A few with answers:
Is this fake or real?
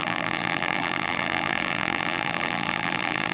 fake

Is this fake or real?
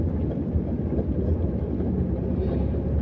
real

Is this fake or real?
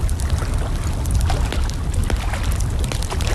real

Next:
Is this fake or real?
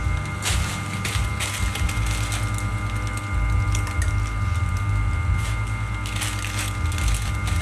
real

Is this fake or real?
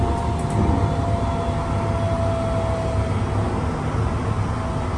real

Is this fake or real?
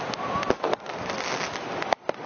real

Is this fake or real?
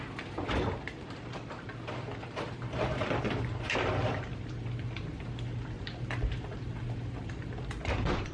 fake